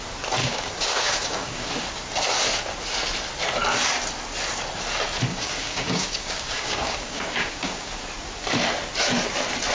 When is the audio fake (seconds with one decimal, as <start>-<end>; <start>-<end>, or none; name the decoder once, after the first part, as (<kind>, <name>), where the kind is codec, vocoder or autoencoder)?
0.4-1.7 (codec, DAC); 5.3-7.9